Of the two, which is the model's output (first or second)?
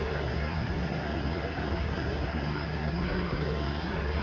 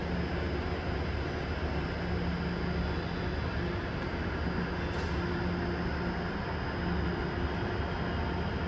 first